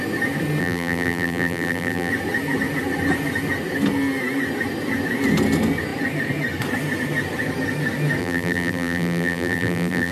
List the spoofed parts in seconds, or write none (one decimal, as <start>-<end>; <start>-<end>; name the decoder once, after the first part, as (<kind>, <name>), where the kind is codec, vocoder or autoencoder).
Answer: 0.6-2.1 (vocoder, BigVGAN v2); 8.2-10.1